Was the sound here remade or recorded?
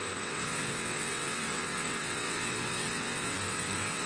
remade